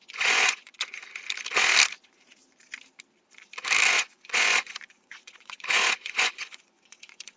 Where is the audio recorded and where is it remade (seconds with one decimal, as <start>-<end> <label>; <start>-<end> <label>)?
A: 0.0-1.0 remade; 1.0-3.9 recorded; 3.9-7.4 remade